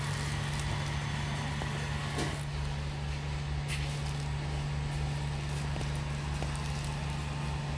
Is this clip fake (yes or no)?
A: no